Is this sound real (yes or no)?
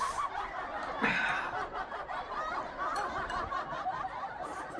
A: yes